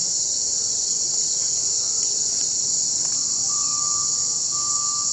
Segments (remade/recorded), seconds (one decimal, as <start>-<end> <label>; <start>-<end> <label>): 0.0-3.7 remade; 3.7-5.1 recorded